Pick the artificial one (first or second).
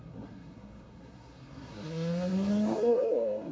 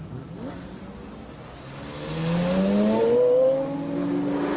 first